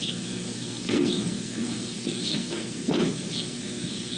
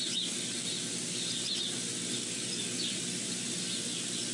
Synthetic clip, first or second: first